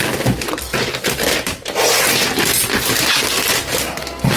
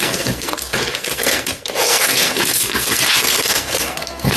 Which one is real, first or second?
first